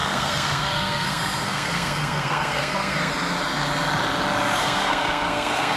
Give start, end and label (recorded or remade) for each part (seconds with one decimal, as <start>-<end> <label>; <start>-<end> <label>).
0.0-3.1 remade; 3.1-4.6 recorded; 4.6-5.8 remade

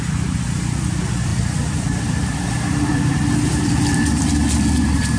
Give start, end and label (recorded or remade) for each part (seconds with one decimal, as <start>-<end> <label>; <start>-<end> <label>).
0.0-1.3 recorded; 1.3-3.2 remade; 3.2-5.2 recorded

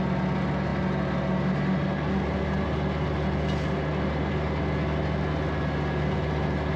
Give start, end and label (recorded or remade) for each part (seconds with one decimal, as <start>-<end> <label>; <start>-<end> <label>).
0.0-6.8 recorded

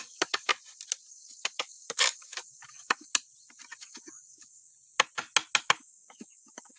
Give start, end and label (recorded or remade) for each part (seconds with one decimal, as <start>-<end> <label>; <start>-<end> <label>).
0.0-0.5 remade; 0.5-1.1 recorded; 1.1-3.1 remade; 3.1-3.8 recorded; 3.8-4.7 remade; 4.7-5.6 recorded; 5.6-6.8 remade

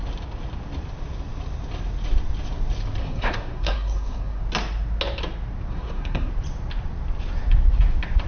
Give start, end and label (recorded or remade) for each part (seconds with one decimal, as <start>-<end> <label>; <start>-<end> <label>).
0.0-3.0 recorded; 3.0-4.4 remade; 4.4-5.7 recorded; 5.7-6.3 remade; 6.3-8.3 recorded

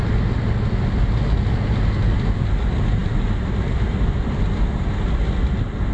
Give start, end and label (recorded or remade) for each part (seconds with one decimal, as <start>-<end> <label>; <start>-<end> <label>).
0.0-5.9 recorded